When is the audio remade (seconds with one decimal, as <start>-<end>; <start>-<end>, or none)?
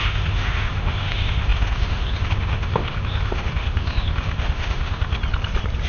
0.0-5.2